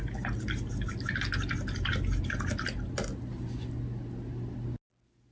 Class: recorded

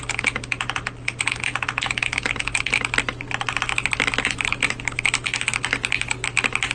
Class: recorded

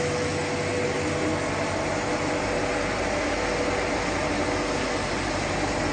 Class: recorded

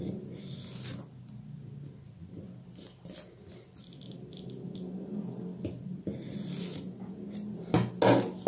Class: recorded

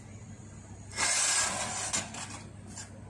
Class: recorded